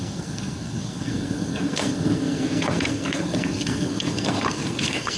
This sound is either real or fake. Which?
fake